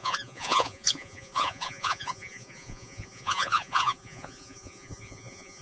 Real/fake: fake